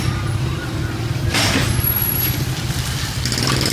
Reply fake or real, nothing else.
real